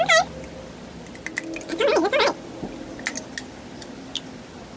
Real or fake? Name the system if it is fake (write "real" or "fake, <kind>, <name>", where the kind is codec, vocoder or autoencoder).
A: real